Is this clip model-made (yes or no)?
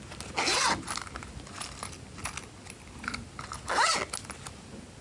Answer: no